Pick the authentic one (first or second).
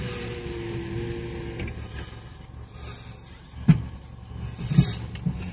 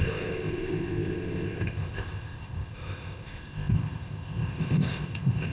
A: first